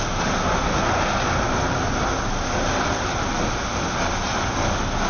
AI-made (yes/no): no